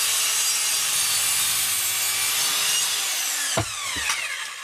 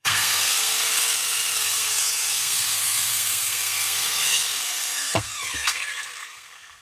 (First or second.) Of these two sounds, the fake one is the second